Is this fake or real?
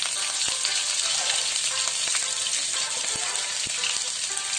real